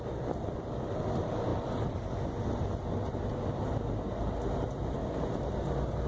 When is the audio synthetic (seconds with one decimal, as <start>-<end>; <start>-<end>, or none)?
none